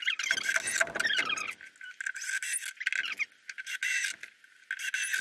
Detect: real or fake real